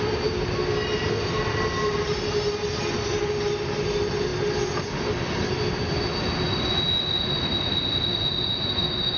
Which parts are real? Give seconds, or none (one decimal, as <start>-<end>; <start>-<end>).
0.0-9.2